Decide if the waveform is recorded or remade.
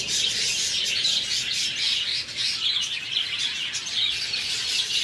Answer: recorded